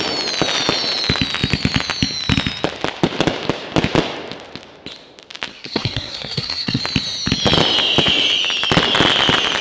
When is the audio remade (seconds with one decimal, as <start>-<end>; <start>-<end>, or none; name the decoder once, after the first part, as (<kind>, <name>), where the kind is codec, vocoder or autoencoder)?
5.5-6.8 (codec, SNAC)